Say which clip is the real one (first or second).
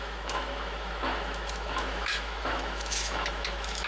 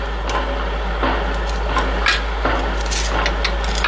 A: second